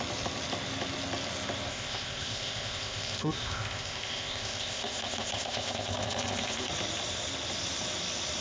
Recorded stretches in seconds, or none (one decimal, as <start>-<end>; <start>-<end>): 0.0-1.7; 6.7-8.4